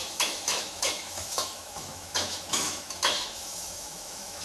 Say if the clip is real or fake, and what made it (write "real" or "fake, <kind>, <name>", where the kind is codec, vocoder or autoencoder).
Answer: fake, autoencoder, DAC-VAE